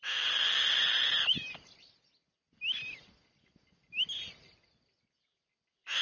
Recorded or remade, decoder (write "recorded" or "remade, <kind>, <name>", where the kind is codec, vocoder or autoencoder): recorded